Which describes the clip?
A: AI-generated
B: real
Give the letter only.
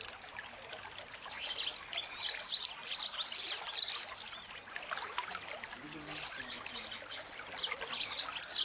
B